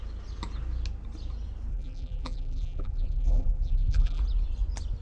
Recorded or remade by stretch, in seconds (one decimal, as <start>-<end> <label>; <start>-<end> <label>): 0.0-1.7 recorded; 1.7-4.2 remade; 4.2-5.0 recorded